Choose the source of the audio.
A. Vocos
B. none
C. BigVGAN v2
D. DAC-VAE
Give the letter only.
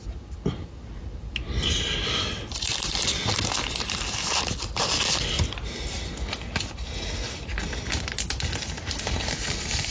B